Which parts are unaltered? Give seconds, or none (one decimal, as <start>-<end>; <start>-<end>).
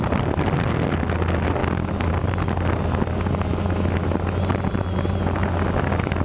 0.0-6.2